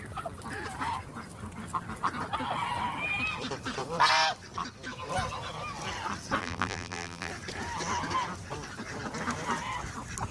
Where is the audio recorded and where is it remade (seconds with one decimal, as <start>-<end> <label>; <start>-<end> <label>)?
0.0-6.4 recorded; 6.4-7.3 remade; 7.3-10.3 recorded